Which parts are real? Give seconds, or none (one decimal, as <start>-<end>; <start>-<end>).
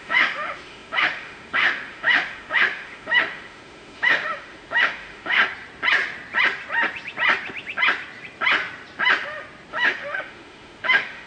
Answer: 5.4-9.7